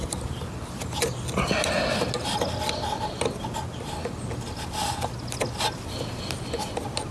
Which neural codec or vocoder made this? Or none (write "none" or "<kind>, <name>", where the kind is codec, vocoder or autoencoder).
none